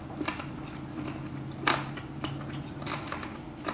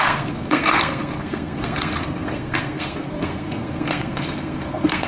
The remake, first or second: second